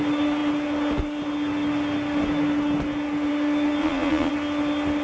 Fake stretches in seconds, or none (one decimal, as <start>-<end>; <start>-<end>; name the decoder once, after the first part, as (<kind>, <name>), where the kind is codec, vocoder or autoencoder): 3.8-4.3 (vocoder, Vocos)